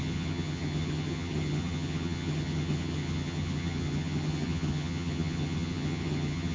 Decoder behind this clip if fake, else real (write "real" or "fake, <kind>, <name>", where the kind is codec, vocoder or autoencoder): fake, vocoder, HiFi-GAN